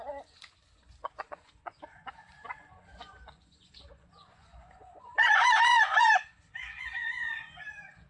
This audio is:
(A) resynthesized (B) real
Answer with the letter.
A